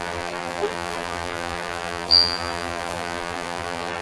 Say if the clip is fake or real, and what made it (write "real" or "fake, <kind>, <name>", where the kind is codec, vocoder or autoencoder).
fake, vocoder, BigVGAN v2